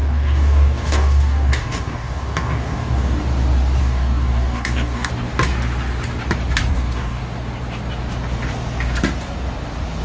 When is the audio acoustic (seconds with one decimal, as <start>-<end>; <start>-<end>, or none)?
3.2-3.8; 5.1-6.7; 7.2-10.0